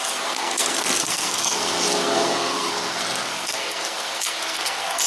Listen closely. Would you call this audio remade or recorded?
remade